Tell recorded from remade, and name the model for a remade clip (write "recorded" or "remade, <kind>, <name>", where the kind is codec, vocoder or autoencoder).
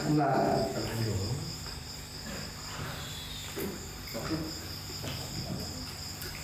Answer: recorded